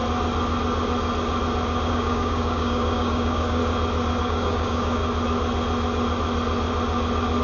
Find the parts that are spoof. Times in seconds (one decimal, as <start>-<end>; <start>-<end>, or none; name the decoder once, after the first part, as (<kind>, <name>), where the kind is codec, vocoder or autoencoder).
1.9-3.6 (codec, DAC); 4.2-5.0